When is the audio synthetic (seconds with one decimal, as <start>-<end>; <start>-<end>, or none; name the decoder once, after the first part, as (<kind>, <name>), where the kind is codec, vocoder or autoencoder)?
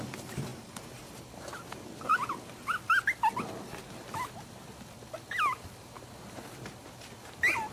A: none